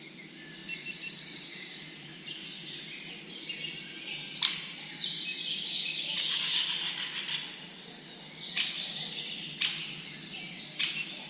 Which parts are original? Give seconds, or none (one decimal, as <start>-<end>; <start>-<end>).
0.0-5.5; 6.7-11.3